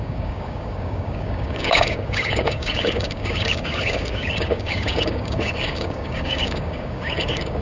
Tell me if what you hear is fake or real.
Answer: fake